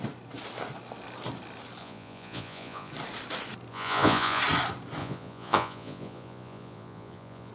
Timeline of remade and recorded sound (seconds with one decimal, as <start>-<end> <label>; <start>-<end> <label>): 0.0-1.8 recorded; 1.8-2.9 remade; 2.9-3.7 recorded; 3.7-4.4 remade; 4.4-5.0 recorded; 5.0-7.5 remade